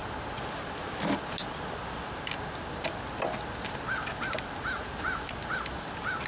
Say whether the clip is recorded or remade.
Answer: recorded